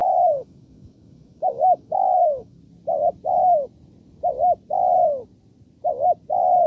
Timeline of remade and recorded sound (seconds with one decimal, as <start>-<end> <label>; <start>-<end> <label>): 0.0-2.6 remade; 2.6-6.7 recorded